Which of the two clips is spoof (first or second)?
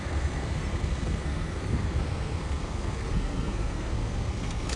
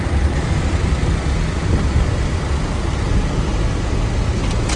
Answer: first